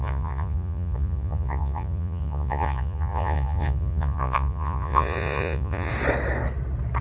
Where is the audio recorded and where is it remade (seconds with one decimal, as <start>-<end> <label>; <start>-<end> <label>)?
0.0-5.9 remade; 5.9-7.0 recorded